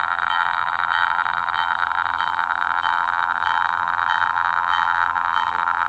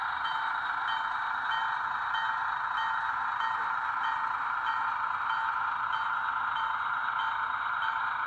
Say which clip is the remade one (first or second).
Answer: first